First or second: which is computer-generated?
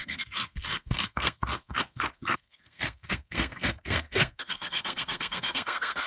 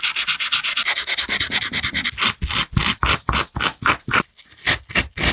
first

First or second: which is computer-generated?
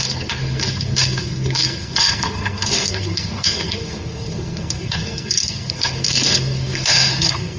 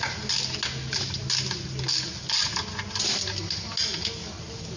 first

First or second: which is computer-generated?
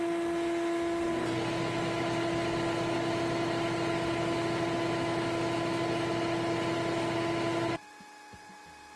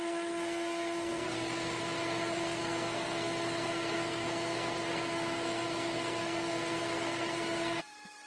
second